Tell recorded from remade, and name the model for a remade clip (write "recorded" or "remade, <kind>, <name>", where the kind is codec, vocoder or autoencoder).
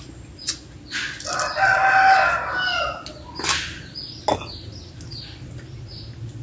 recorded